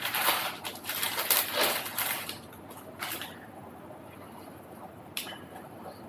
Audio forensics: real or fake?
real